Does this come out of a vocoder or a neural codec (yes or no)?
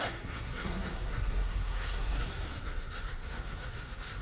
yes